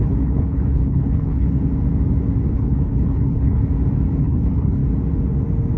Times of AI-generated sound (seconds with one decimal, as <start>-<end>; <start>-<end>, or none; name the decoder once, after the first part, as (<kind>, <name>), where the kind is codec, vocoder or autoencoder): 0.0-1.6 (codec, HILCodec); 2.5-3.6; 4.2-4.8